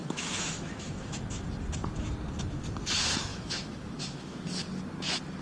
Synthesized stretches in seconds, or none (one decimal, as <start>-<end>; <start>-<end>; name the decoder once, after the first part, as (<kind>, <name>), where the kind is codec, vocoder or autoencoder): 0.0-1.2 (autoencoder, DAC-VAE); 3.3-4.5

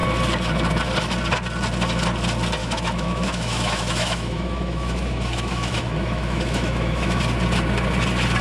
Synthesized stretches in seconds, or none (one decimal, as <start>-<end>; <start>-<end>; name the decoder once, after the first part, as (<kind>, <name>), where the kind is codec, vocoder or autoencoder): 2.6-7.2 (autoencoder, DAC-VAE)

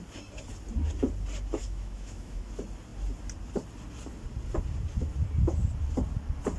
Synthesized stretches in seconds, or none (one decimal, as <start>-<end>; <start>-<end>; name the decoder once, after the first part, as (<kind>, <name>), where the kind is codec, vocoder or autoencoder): 1.6-2.5 (autoencoder, DAC-VAE)

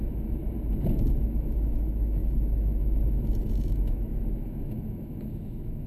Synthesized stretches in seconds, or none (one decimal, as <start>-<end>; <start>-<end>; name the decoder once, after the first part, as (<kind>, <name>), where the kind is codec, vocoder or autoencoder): 0.0-0.4 (autoencoder, DAC-VAE); 1.1-5.9

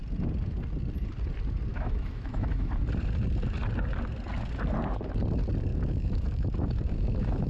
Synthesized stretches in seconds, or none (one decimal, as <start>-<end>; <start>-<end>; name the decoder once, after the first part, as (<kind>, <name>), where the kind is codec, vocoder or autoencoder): 1.7-2.7 (autoencoder, DAC-VAE); 5.7-7.5

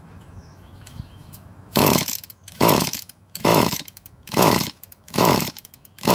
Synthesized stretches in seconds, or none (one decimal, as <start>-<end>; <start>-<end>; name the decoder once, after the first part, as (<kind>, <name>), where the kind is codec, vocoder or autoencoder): 0.0-6.1 (autoencoder, DAC-VAE)